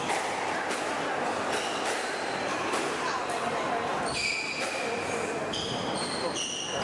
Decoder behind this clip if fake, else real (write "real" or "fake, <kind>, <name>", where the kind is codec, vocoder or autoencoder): real